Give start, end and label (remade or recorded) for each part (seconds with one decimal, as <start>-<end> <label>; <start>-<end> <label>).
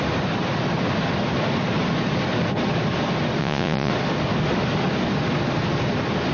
0.0-3.4 recorded; 3.4-3.9 remade; 3.9-6.3 recorded